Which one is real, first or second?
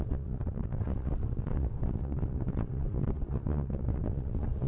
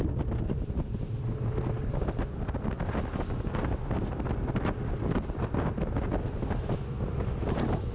second